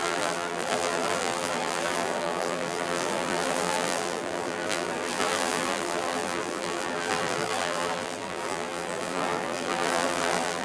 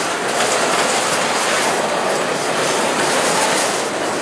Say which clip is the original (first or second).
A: second